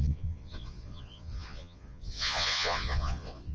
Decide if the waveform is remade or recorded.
remade